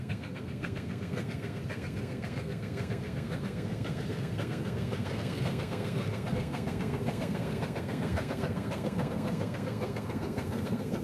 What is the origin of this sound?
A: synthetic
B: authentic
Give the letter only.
A